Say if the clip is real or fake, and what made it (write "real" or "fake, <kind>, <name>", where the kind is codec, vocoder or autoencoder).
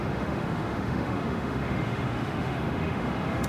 fake, autoencoder, DAC-VAE